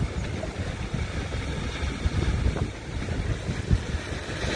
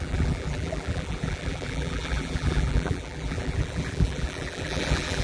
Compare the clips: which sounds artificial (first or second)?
second